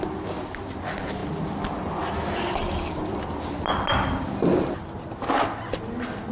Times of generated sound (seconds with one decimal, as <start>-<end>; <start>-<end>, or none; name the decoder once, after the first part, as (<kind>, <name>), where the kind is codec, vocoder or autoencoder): none